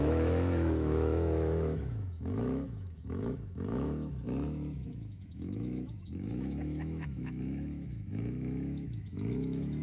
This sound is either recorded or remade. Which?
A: remade